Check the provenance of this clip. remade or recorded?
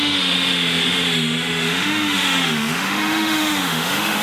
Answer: remade